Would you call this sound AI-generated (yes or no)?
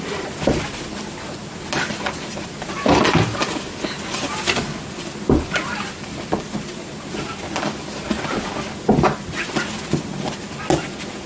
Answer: no